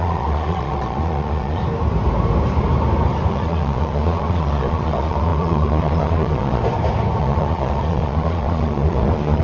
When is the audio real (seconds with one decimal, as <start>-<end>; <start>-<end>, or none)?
1.6-3.3; 6.6-7.2